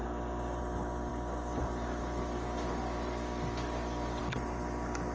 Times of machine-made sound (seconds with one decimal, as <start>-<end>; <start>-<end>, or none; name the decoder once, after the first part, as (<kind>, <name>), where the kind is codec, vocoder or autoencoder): none